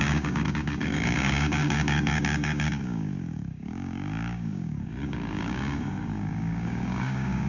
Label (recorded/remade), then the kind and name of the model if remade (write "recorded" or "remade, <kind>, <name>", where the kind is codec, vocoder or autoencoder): remade, codec, DAC